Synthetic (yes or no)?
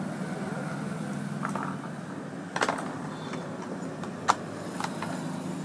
no